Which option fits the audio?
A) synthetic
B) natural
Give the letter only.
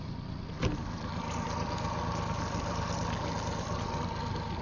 B